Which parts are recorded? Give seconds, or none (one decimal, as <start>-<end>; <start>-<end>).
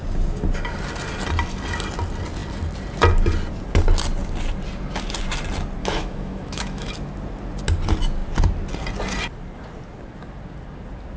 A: 0.0-5.8; 6.9-11.2